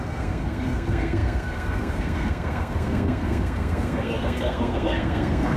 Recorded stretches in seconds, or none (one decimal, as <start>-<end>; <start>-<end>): none